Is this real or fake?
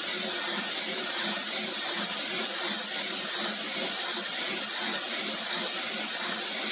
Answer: real